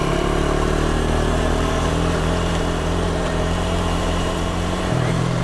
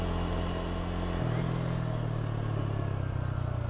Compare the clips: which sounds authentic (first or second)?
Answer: second